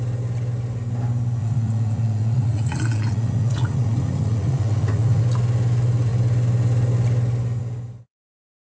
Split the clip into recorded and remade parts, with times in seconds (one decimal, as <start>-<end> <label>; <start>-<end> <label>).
0.0-1.4 recorded; 1.4-5.2 remade; 5.2-8.7 recorded